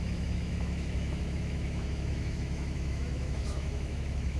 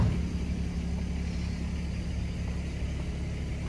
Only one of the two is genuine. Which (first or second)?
second